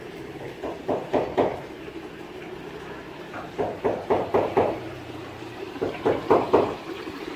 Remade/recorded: remade